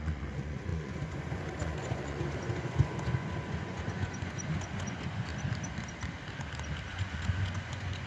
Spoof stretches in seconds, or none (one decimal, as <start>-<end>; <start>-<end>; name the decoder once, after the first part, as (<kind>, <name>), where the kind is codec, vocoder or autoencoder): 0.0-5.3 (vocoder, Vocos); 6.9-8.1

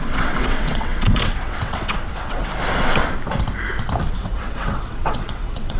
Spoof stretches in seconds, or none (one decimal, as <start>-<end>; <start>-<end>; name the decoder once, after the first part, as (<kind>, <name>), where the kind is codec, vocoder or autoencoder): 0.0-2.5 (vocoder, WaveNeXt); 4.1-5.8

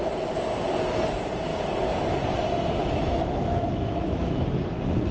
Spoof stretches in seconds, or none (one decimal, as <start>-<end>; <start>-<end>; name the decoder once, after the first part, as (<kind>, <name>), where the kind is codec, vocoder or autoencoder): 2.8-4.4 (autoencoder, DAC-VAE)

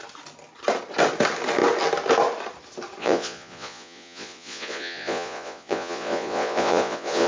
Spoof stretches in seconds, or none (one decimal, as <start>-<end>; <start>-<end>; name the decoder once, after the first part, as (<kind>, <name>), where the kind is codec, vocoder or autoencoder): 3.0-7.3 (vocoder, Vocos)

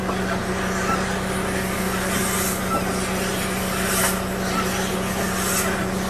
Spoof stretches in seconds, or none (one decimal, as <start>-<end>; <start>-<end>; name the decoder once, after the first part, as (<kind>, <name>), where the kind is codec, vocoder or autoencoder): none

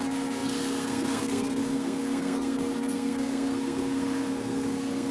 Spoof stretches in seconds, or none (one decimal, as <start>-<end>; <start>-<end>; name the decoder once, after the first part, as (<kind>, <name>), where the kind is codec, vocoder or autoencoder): 0.0-5.1 (codec, SNAC)